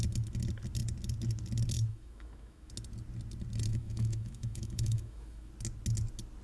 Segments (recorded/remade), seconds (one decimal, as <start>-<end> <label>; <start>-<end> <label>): 0.0-1.9 recorded; 1.9-2.7 remade; 2.7-3.7 recorded; 3.7-5.5 remade; 5.5-6.4 recorded

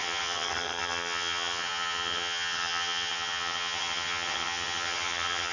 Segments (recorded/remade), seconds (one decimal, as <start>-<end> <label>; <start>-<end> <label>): 0.0-5.5 remade

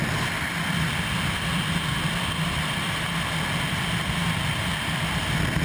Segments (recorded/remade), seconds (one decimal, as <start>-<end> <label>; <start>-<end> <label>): 0.0-4.2 recorded; 4.2-4.8 remade; 4.8-5.6 recorded

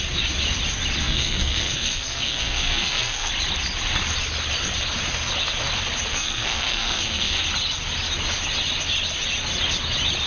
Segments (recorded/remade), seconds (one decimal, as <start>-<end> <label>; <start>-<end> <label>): 0.0-1.0 recorded; 1.0-3.3 remade; 3.3-6.1 recorded; 6.1-7.4 remade; 7.4-10.3 recorded

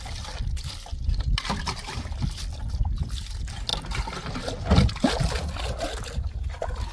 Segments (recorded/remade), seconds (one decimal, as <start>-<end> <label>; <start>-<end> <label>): 0.0-6.9 recorded

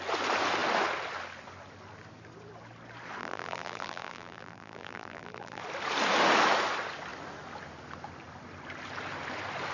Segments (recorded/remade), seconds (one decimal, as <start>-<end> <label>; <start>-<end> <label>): 0.0-3.2 recorded; 3.2-5.6 remade; 5.6-9.7 recorded

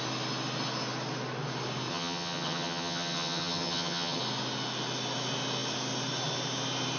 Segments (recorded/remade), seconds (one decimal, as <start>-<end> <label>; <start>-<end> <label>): 0.0-1.9 recorded; 1.9-4.2 remade; 4.2-7.0 recorded